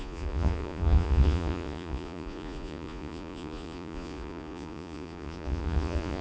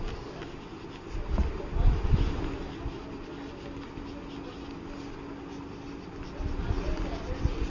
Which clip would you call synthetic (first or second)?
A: first